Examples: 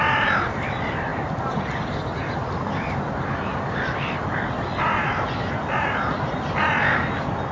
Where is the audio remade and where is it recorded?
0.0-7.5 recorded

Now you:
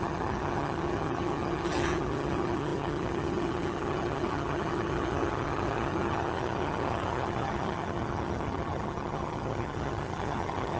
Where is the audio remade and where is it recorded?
0.0-10.8 remade

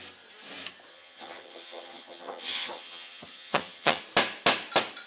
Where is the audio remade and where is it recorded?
0.0-0.9 recorded; 0.9-4.0 remade; 4.0-5.1 recorded

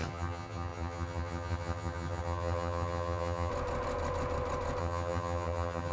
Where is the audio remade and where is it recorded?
0.0-3.5 remade; 3.5-4.8 recorded; 4.8-5.9 remade

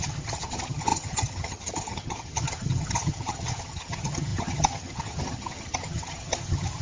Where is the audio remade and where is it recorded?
0.0-6.8 remade

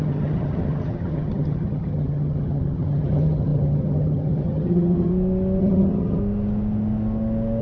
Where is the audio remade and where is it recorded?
0.0-5.1 remade; 5.1-5.6 recorded; 5.6-6.2 remade; 6.2-7.6 recorded

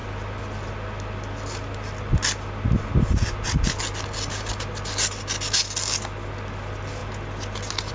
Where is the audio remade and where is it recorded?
0.0-7.9 recorded